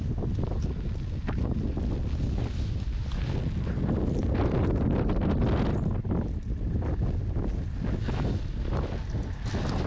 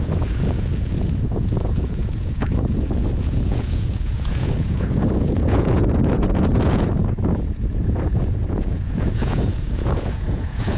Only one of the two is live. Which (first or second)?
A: first